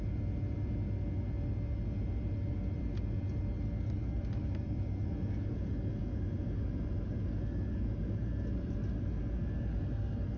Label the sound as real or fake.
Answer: real